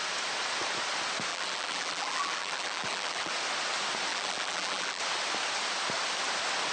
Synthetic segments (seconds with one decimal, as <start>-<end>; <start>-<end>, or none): 1.3-3.3; 4.1-5.0